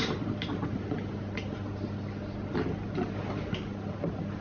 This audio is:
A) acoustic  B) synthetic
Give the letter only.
A